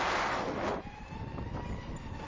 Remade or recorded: recorded